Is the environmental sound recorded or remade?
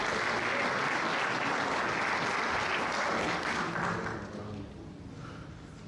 recorded